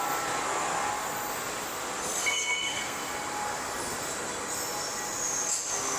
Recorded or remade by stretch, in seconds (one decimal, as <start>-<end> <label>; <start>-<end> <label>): 0.0-2.2 recorded; 2.2-3.0 remade; 3.0-6.0 recorded